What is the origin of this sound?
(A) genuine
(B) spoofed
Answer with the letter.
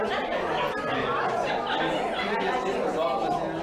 A